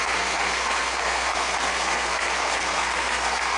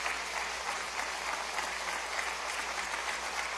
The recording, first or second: second